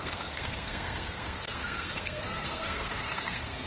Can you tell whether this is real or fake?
fake